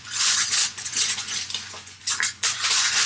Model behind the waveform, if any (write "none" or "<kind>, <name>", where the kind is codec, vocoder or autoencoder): vocoder, Vocos